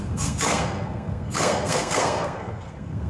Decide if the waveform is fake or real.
fake